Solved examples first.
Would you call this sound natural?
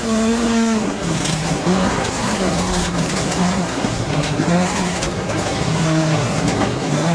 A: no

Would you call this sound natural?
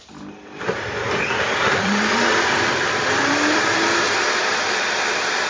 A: no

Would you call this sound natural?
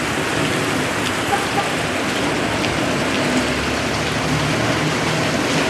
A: yes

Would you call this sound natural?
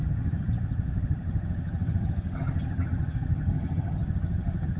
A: no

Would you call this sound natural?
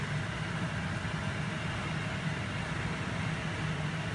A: yes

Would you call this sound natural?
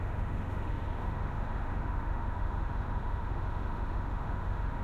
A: no